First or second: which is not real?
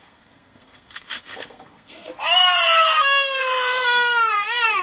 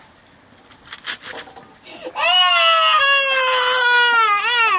first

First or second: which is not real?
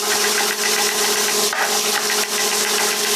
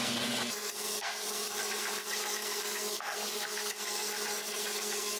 second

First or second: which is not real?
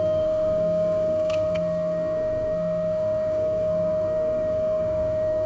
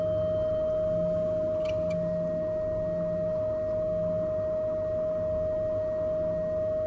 first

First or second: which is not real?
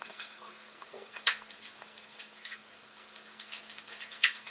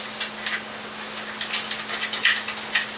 first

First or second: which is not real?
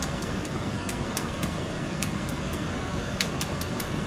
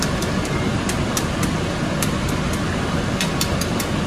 first